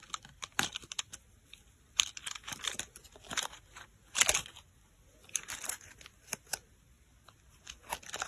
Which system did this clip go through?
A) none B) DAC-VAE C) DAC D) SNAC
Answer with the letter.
A